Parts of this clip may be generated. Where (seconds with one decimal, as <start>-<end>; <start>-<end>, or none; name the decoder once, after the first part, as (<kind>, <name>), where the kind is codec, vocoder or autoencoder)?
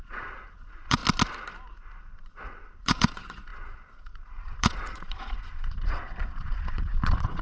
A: 0.0-1.0 (vocoder, Vocos); 2.0-7.4